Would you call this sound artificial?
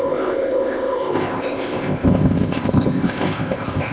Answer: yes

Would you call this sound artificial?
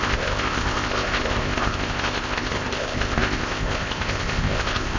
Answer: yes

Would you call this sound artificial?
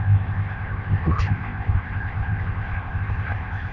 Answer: yes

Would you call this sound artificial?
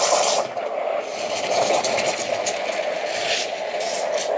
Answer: no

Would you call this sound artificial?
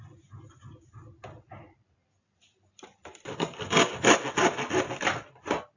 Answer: no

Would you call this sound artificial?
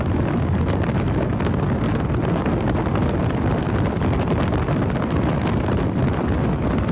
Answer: no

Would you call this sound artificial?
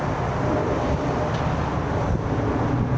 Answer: no